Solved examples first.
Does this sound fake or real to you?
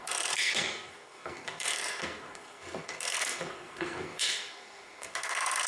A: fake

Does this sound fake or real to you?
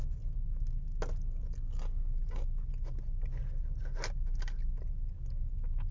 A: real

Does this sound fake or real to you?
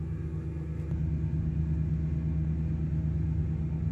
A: real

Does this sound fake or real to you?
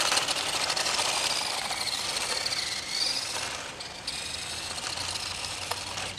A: real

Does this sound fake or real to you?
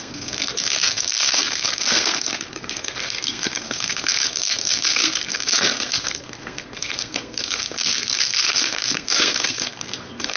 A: fake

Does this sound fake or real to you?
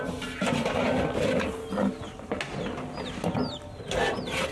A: real